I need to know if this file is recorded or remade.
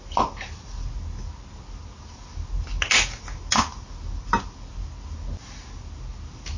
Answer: recorded